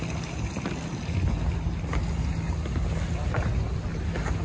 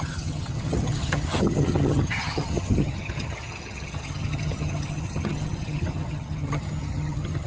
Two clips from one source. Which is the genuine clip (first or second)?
first